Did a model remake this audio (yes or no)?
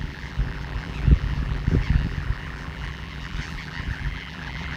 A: yes